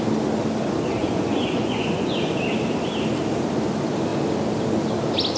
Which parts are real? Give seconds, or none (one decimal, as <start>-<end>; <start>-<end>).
0.0-1.0; 2.3-5.4